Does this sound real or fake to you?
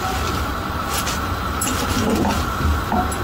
real